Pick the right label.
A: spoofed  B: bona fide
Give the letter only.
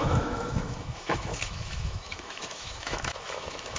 A